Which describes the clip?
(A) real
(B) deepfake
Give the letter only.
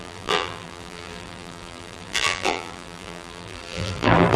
B